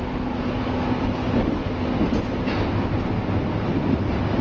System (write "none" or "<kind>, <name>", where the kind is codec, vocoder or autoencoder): none